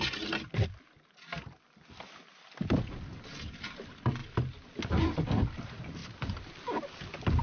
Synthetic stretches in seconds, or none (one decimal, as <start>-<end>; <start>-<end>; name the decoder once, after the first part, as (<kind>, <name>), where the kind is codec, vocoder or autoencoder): none